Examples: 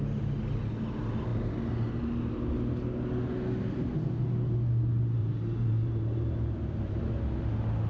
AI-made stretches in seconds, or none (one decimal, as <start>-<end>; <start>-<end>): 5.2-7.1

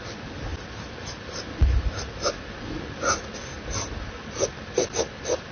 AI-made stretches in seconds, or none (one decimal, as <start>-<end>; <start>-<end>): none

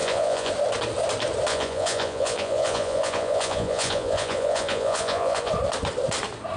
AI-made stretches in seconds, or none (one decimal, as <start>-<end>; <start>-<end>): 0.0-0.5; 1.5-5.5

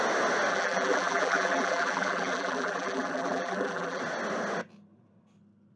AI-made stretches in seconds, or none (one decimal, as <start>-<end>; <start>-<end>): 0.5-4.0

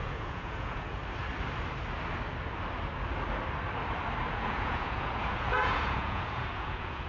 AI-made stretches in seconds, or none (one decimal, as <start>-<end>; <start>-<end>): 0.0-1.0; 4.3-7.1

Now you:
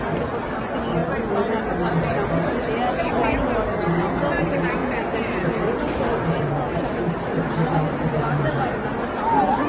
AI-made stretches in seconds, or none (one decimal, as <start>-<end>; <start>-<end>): none

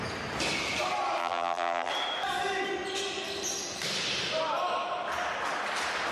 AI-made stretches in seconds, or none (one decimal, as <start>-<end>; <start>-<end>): 1.2-1.9